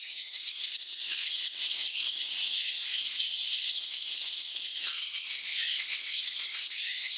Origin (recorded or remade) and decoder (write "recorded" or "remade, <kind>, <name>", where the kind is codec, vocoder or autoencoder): remade, codec, SNAC